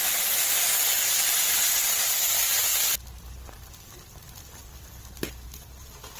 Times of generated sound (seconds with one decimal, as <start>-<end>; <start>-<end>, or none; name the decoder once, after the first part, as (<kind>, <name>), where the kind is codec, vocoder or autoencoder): none

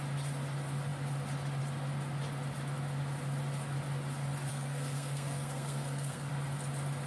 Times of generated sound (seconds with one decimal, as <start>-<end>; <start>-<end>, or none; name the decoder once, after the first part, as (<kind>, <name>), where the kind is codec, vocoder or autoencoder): 4.5-6.3 (codec, SNAC)

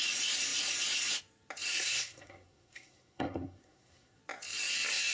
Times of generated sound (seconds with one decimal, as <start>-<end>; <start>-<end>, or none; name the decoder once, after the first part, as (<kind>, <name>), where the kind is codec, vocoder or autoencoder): 1.7-4.2 (codec, SNAC)

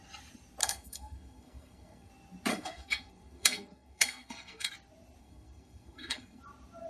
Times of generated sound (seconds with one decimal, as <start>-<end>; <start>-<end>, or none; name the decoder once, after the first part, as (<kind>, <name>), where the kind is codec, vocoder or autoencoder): 0.6-2.1 (codec, SNAC); 2.5-4.7; 5.2-6.4

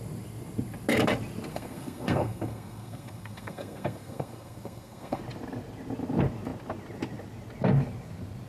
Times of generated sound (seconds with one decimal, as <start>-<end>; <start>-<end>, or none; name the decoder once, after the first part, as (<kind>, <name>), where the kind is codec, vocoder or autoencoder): 1.5-5.2 (codec, SNAC)